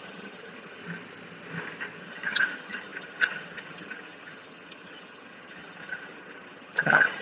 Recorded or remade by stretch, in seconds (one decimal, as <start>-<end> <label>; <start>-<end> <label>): 0.0-0.8 remade; 0.8-2.0 recorded; 2.0-7.2 remade

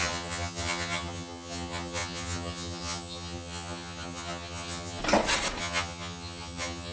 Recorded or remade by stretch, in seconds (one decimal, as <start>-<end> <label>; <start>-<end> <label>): 0.0-5.0 remade; 5.0-5.6 recorded; 5.6-6.9 remade

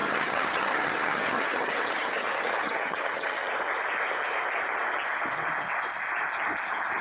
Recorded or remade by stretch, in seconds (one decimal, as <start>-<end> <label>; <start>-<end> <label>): 0.0-3.5 remade; 3.5-7.0 recorded

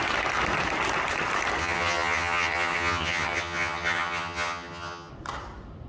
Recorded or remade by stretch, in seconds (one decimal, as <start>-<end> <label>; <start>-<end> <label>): 0.0-1.6 recorded; 1.6-5.1 remade; 5.1-5.9 recorded

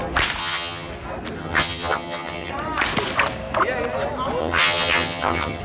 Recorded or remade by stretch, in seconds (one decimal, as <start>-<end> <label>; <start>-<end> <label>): 0.0-0.4 recorded; 0.4-0.9 remade; 0.9-1.4 recorded; 1.4-2.5 remade; 2.5-4.4 recorded; 4.4-5.6 remade

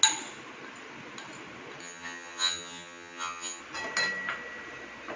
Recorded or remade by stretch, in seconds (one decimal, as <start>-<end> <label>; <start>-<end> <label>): 0.0-1.8 recorded; 1.8-3.6 remade; 3.6-5.2 recorded

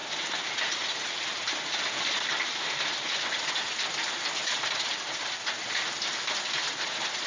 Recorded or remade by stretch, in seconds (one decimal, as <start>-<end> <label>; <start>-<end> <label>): 0.0-7.3 recorded

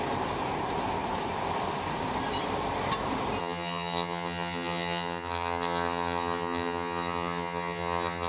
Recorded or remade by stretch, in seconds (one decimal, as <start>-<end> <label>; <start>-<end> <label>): 0.0-3.4 recorded; 3.4-8.3 remade